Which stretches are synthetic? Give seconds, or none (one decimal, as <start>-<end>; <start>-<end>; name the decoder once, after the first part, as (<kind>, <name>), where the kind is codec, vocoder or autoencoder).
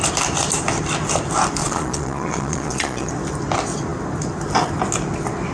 1.6-3.1 (vocoder, Vocos)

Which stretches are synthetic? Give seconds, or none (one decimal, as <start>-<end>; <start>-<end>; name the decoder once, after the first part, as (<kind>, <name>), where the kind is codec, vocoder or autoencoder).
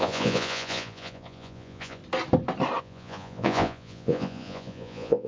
0.0-2.0 (vocoder, Vocos); 2.8-5.3